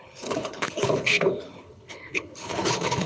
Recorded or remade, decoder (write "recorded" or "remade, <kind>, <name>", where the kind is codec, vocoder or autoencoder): remade, codec, HILCodec